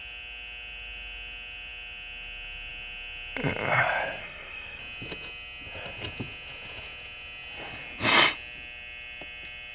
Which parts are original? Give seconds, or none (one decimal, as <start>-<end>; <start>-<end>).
0.0-4.2; 4.8-9.7